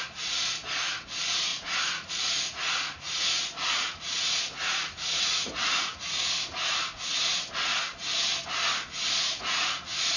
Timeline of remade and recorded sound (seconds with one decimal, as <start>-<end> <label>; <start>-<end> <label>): 0.0-7.7 remade; 7.7-9.1 recorded; 9.1-10.2 remade